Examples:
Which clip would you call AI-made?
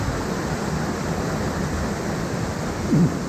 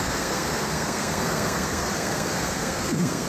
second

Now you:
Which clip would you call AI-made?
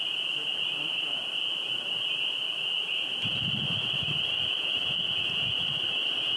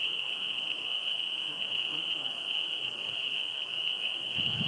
second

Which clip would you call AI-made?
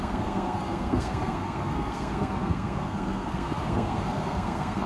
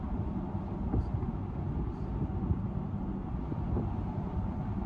first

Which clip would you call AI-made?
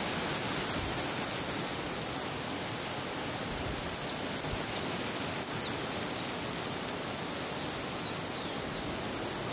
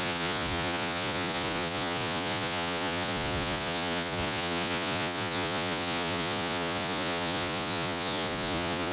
second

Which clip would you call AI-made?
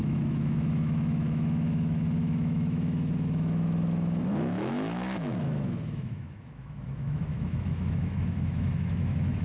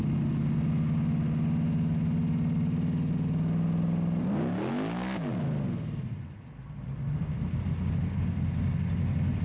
first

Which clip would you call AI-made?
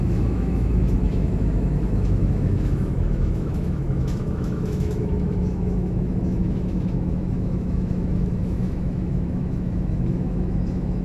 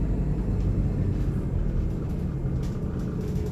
first